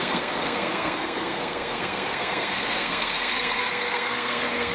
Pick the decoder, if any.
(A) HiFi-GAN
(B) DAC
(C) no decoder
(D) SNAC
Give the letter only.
D